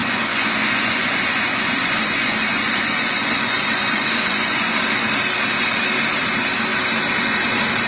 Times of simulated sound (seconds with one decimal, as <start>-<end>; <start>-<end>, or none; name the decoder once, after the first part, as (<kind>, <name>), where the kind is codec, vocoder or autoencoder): 0.0-4.7 (vocoder, Vocos)